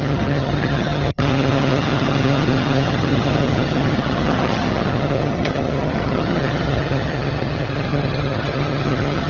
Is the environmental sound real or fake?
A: fake